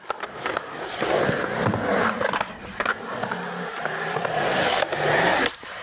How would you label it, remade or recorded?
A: recorded